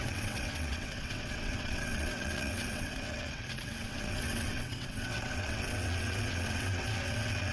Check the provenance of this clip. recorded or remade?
remade